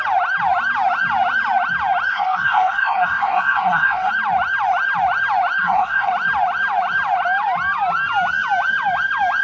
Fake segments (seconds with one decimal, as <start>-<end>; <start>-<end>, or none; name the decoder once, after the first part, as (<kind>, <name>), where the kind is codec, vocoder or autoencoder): 2.1-4.1 (codec, SNAC); 5.6-6.1